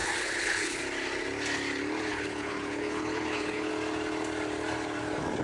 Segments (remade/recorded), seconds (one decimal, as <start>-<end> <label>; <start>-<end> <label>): 0.0-0.8 remade; 0.8-2.1 recorded; 2.1-3.7 remade; 3.7-5.4 recorded